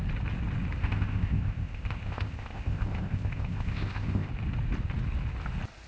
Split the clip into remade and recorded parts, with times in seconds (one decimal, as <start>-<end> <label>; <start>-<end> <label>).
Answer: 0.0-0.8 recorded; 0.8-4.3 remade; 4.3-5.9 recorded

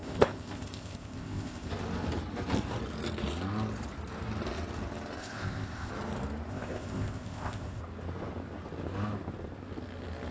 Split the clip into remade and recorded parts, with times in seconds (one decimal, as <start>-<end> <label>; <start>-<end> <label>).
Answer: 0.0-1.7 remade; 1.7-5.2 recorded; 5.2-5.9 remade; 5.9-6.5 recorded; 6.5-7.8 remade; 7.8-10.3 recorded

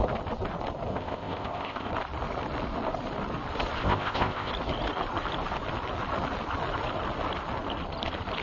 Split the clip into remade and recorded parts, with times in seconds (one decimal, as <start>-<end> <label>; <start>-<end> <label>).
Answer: 0.0-0.9 recorded; 0.9-1.9 remade; 1.9-3.8 recorded; 3.8-4.5 remade; 4.5-8.4 recorded

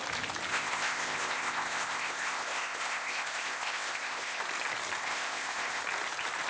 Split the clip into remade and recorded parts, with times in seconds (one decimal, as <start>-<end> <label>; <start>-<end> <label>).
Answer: 0.0-0.5 recorded; 0.5-4.4 remade; 4.4-5.0 recorded; 5.0-5.8 remade; 5.8-6.5 recorded

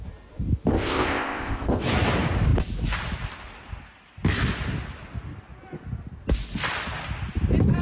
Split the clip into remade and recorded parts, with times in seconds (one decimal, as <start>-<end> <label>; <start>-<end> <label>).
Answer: 0.0-0.7 recorded; 0.7-1.8 remade; 1.8-7.8 recorded

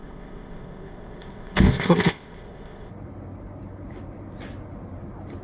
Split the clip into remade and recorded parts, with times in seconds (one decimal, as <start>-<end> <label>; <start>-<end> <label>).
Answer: 0.0-2.9 remade; 2.9-5.4 recorded

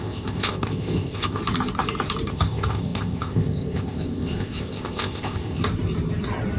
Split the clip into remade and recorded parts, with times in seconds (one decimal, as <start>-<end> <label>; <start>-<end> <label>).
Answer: 0.0-1.4 remade; 1.4-2.3 recorded; 2.3-5.6 remade; 5.6-6.6 recorded